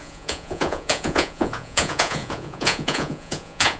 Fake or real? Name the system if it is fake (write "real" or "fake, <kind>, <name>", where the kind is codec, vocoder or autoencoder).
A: fake, vocoder, Vocos